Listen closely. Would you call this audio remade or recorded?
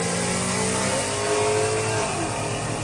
recorded